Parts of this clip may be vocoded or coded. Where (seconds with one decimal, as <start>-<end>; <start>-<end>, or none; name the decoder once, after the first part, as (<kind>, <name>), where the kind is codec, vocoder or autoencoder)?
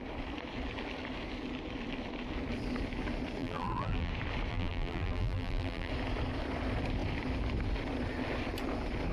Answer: 3.4-4.1 (vocoder, BigVGAN v2); 4.5-5.9